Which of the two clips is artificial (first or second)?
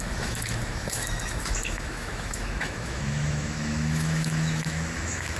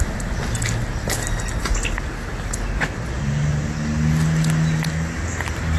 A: first